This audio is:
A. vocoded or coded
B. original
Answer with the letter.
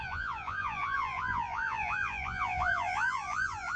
A